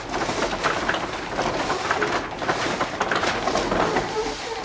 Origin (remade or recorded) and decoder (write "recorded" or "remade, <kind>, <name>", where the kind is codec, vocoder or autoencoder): recorded